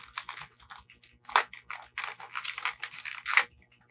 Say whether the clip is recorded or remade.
recorded